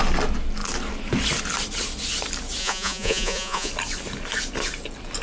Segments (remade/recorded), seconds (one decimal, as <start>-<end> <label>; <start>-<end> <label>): 0.0-2.6 recorded; 2.6-3.7 remade; 3.7-5.2 recorded